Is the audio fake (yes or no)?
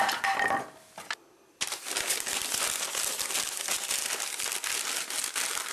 no